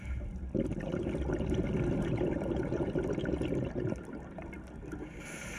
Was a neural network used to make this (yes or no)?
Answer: no